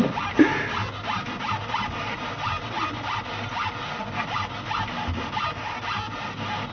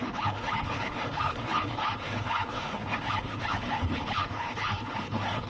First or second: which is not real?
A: second